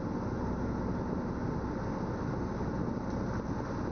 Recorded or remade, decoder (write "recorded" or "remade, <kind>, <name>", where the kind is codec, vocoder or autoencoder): recorded